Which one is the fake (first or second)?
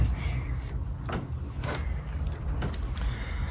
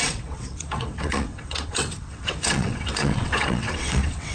second